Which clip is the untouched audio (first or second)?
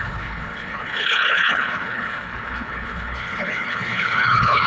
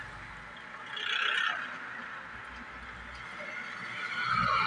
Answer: second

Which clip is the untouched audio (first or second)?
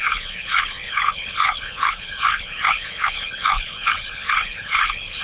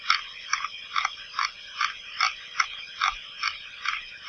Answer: second